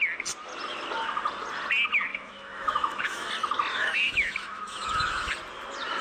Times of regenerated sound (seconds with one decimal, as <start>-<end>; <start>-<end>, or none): 2.1-3.3; 3.7-5.3